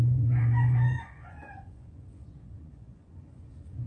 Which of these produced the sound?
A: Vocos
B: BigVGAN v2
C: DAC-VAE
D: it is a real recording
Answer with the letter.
A